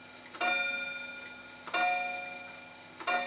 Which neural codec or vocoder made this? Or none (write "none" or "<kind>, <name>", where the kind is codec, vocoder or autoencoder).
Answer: none